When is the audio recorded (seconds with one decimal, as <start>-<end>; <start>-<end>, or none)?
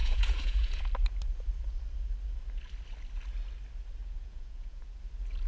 0.8-4.0; 5.0-5.5